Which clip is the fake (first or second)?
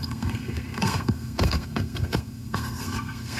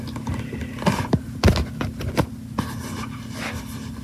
first